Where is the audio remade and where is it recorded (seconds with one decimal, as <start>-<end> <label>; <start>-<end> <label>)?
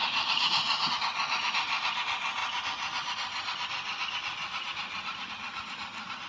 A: 0.0-0.9 remade; 0.9-6.3 recorded